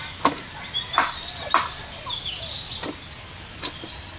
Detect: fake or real real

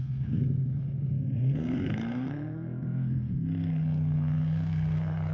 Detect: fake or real fake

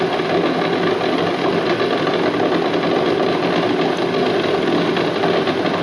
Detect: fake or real real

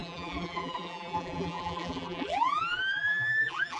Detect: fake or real fake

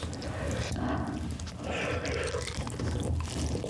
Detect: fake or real real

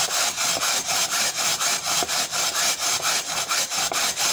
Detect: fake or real fake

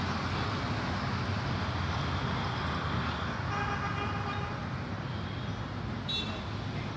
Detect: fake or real real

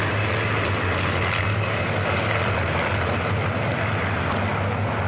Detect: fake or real real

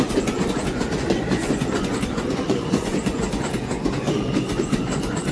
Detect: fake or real fake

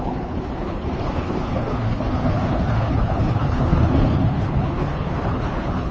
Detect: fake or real fake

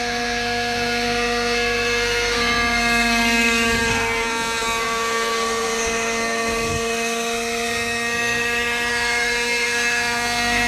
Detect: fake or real fake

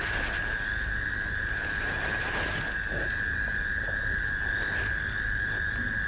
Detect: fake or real real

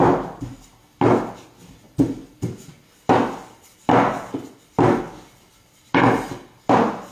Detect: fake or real real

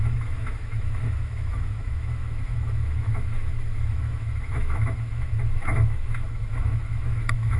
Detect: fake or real fake